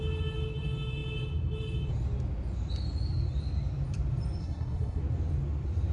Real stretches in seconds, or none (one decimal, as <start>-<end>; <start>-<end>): 0.0-4.4; 5.0-5.9

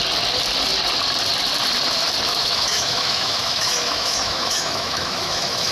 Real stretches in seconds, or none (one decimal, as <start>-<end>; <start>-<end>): 0.0-2.3